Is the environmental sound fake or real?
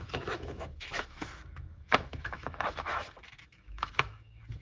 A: fake